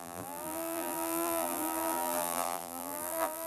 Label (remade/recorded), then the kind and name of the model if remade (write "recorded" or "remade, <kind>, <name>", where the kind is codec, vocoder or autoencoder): remade, vocoder, BigVGAN v2